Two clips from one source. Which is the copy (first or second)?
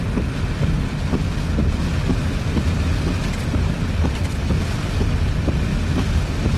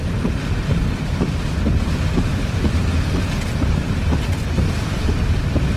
second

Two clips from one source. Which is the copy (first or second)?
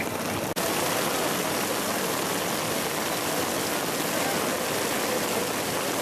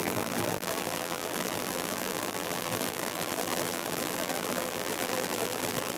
second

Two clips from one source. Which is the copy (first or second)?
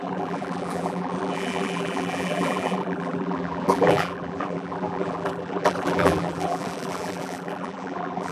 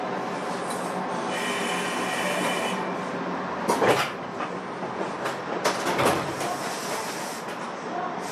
first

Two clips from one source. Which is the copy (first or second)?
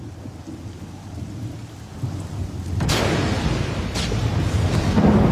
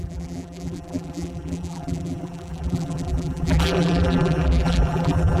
second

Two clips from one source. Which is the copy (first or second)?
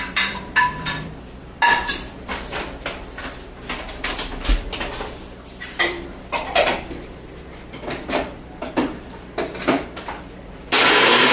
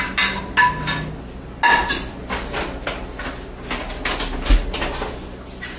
first